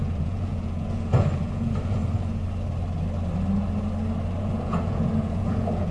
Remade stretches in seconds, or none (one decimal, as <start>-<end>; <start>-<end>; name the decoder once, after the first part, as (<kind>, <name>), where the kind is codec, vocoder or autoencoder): 0.0-2.0 (vocoder, Vocos); 4.4-5.9